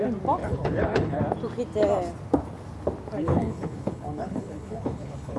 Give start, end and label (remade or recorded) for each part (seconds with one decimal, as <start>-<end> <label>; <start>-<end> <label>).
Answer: 0.0-0.4 recorded; 0.4-1.2 remade; 1.2-3.2 recorded; 3.2-5.4 remade